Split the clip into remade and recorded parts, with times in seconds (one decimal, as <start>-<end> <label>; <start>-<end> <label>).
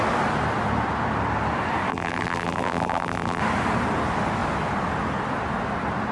0.0-1.9 recorded; 1.9-3.4 remade; 3.4-6.1 recorded